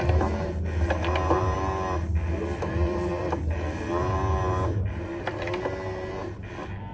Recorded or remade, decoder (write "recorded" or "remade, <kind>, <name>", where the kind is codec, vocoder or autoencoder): recorded